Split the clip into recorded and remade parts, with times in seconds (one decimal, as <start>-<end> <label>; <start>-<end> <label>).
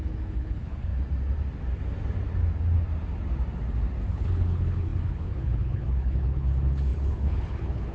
0.0-0.9 remade; 0.9-4.1 recorded; 4.1-7.9 remade